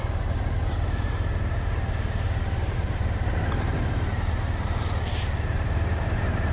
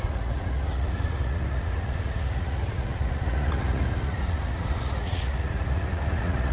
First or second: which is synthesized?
second